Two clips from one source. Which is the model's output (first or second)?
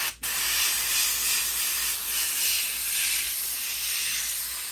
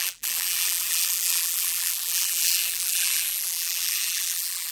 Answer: second